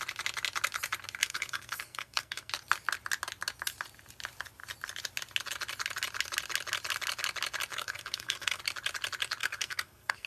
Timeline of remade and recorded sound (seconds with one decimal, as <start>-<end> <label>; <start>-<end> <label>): 0.0-1.2 recorded; 1.2-2.5 remade; 2.5-7.7 recorded; 7.7-8.6 remade; 8.6-9.4 recorded; 9.4-10.3 remade